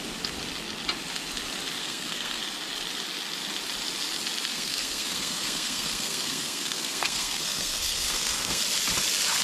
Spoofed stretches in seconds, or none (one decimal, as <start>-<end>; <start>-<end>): 1.8-2.4; 4.5-8.6